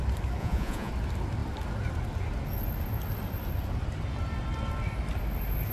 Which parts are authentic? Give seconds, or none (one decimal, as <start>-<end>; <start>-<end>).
0.0-0.4; 0.9-5.7